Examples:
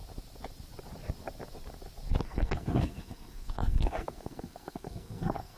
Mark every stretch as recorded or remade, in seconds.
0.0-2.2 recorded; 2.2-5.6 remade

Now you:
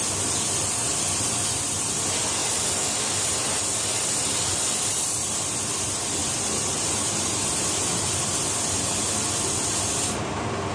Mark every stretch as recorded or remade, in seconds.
0.0-10.7 recorded

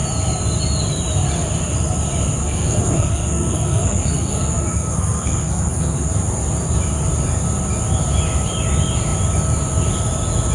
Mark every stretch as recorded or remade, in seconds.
0.0-2.4 recorded; 2.4-6.1 remade; 6.1-10.5 recorded

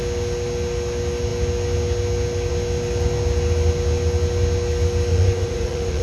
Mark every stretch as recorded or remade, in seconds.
0.0-5.1 recorded; 5.1-6.0 remade

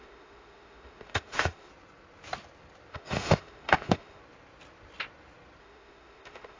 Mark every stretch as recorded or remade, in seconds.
0.0-1.7 remade; 1.7-2.9 recorded; 2.9-4.2 remade; 4.2-5.6 recorded; 5.6-6.6 remade

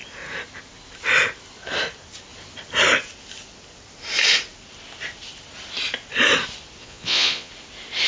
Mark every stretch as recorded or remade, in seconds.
0.0-6.8 recorded; 6.8-7.5 remade; 7.5-8.1 recorded

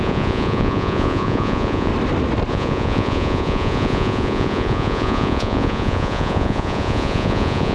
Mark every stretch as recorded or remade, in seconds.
0.0-1.9 remade; 1.9-2.5 recorded; 2.5-7.7 remade

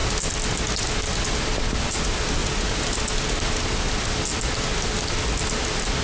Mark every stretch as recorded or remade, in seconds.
0.0-6.0 recorded